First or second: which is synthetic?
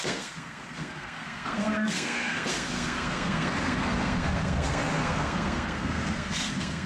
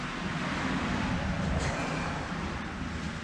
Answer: first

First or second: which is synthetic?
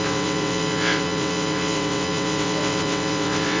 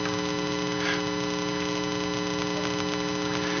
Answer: first